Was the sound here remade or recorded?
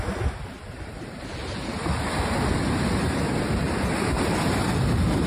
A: recorded